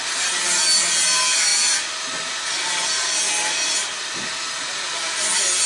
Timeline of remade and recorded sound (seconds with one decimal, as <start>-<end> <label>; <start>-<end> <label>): 0.0-5.7 recorded